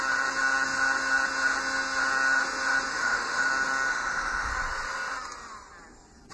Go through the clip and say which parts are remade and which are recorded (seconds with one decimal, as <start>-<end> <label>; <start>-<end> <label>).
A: 0.0-2.9 recorded; 2.9-3.5 remade; 3.5-3.9 recorded; 3.9-4.5 remade; 4.5-6.3 recorded